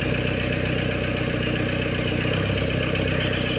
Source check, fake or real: real